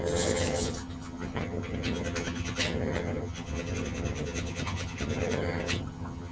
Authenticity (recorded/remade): remade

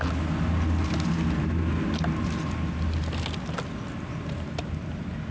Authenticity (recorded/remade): recorded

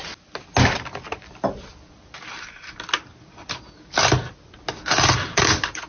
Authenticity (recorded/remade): recorded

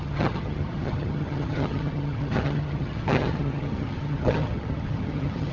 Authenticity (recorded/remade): remade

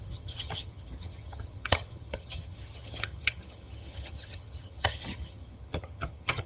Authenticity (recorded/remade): remade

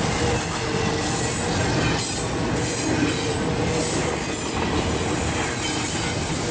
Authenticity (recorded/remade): recorded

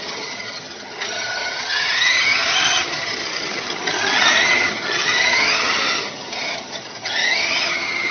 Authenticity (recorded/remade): remade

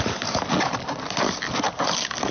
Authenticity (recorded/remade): recorded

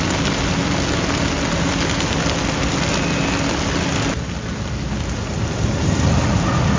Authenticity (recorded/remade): recorded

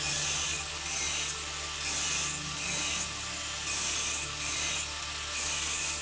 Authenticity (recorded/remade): recorded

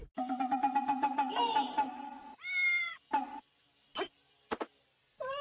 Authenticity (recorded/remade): recorded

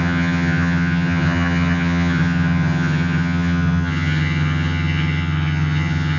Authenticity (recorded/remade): remade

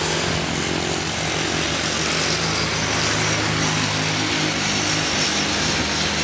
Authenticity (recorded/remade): recorded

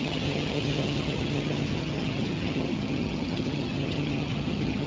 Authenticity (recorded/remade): remade